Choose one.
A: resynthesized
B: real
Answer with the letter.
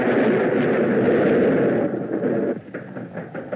B